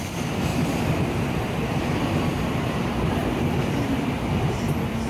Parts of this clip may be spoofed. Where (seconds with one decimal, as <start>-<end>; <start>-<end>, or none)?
0.0-3.2